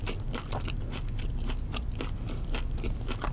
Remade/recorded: recorded